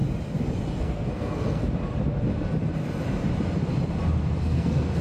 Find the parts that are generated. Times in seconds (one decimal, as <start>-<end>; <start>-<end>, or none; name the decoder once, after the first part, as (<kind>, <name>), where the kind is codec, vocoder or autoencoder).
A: 0.8-1.6 (codec, SNAC); 4.4-5.0